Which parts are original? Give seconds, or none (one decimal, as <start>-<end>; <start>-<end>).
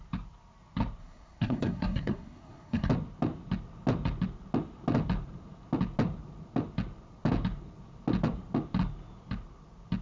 0.0-1.0; 2.9-10.0